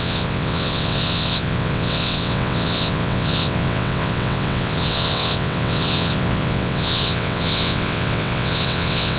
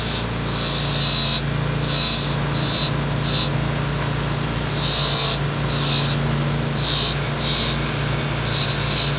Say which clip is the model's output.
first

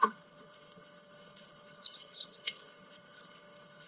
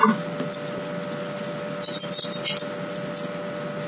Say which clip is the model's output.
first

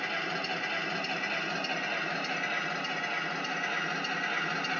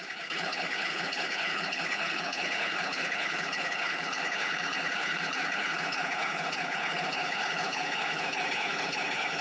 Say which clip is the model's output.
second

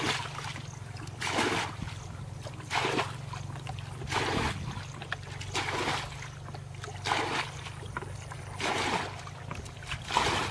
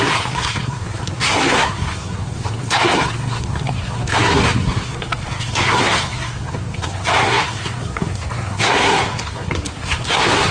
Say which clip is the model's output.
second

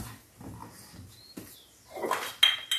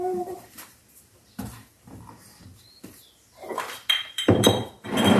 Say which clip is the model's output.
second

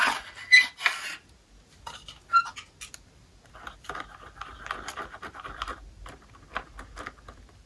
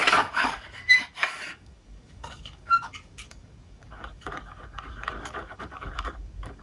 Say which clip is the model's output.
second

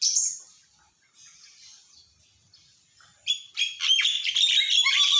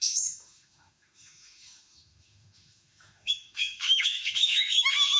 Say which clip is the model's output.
second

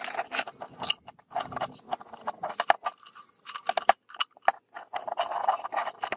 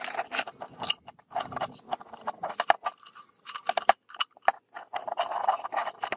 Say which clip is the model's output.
second